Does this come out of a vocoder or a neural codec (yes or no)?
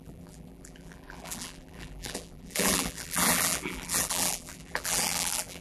yes